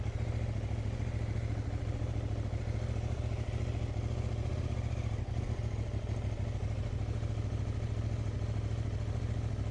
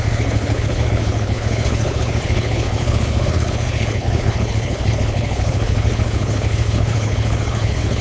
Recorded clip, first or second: first